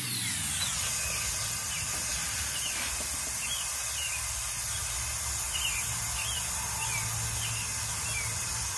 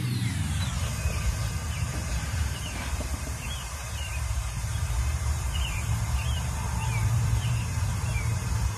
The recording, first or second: first